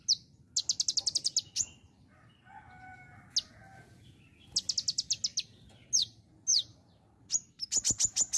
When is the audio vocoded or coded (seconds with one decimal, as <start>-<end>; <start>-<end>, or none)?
6.5-7.5